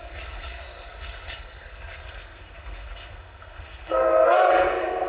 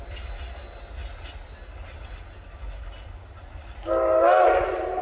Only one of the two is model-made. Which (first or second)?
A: first